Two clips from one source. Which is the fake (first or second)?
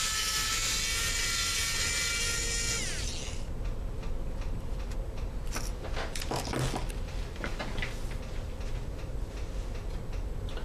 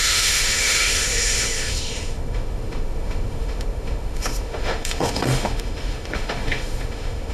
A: second